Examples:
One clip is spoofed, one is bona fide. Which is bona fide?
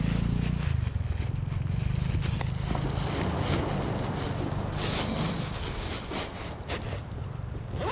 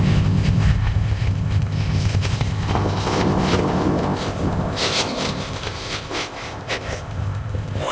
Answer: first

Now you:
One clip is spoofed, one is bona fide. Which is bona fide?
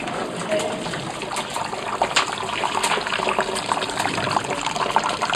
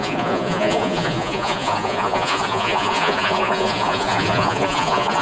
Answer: first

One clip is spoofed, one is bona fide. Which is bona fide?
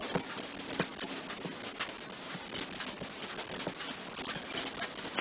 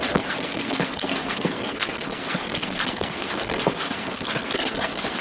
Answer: first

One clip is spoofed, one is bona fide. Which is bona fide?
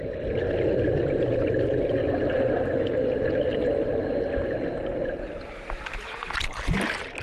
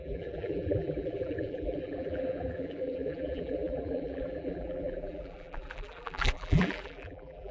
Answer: first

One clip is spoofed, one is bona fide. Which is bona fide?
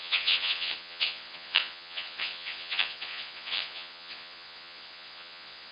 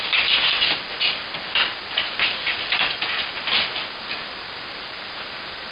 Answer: second